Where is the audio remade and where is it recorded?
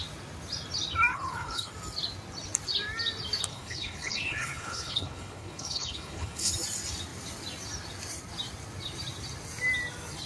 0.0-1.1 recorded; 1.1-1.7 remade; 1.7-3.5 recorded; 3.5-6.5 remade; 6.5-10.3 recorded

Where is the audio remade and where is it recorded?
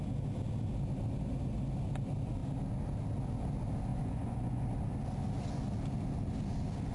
0.0-3.9 recorded; 3.9-4.6 remade; 4.6-6.9 recorded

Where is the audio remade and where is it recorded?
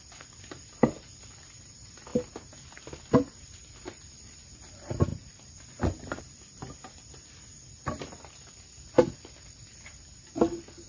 0.0-10.9 recorded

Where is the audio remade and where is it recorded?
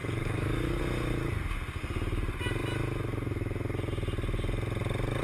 0.0-0.8 remade; 0.8-5.2 recorded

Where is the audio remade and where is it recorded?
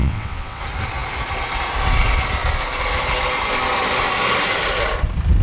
0.0-0.6 remade; 0.6-5.4 recorded